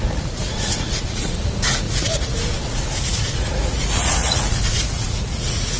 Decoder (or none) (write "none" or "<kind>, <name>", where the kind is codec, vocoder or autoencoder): vocoder, Vocos